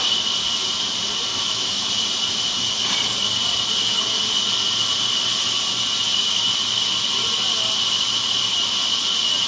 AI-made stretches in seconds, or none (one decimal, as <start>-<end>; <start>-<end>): 1.3-1.9

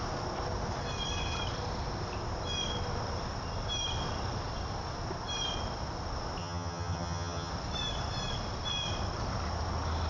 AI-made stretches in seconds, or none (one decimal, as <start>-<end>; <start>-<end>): 6.4-7.5

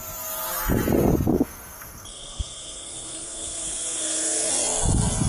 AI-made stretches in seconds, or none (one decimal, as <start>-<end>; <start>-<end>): 1.3-4.5

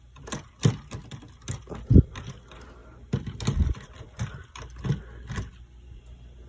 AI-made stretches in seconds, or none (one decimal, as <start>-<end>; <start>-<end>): none